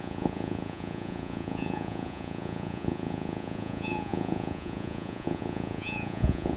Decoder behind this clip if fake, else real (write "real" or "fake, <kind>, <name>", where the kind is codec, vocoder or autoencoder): fake, vocoder, Vocos